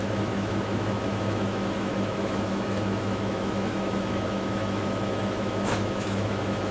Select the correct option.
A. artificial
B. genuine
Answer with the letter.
A